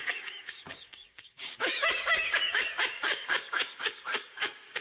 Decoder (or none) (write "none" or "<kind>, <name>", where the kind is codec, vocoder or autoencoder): codec, DAC